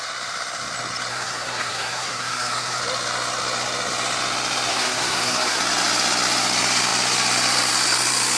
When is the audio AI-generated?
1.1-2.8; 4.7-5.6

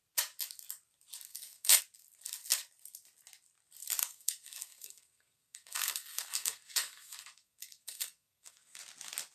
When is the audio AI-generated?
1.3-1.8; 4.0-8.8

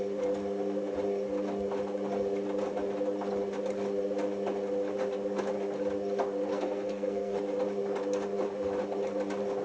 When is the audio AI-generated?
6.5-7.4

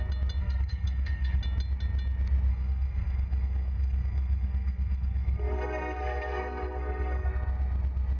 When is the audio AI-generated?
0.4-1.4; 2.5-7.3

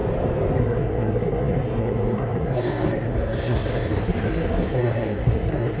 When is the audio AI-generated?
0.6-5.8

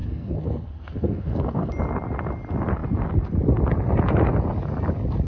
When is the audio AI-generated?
0.0-1.7